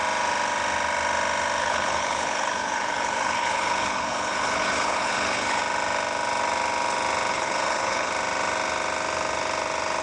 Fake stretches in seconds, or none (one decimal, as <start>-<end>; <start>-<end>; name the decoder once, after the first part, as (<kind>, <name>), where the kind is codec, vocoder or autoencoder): 1.6-5.6 (codec, HILCodec); 7.3-8.1